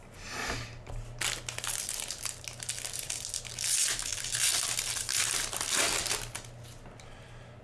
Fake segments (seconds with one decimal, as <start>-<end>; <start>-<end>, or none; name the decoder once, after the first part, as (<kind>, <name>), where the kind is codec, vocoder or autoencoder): none